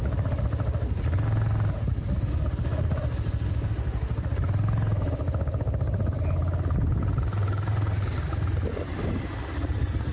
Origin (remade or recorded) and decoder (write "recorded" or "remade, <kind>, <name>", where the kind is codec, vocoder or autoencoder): recorded